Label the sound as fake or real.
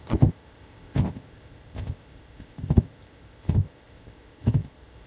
fake